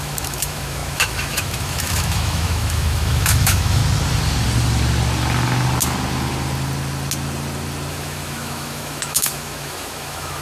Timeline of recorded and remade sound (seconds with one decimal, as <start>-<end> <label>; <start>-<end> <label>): 0.0-3.8 remade; 3.8-7.9 recorded; 7.9-10.4 remade